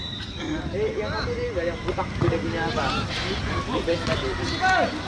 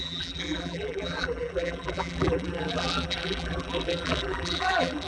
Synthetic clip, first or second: second